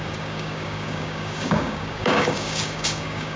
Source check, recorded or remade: remade